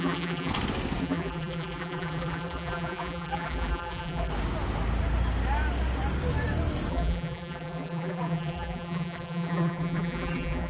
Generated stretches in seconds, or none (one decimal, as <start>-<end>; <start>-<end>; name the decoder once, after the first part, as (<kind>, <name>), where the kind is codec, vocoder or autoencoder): 0.0-0.5 (vocoder, BigVGAN v2); 1.0-4.3; 6.9-10.7